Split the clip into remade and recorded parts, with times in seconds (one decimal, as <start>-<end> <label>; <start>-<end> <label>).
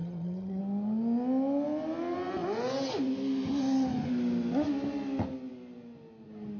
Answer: 0.0-0.6 remade; 0.6-6.6 recorded